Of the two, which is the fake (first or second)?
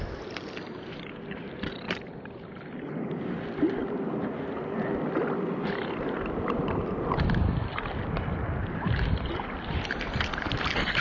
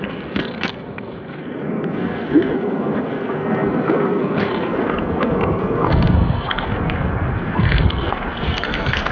second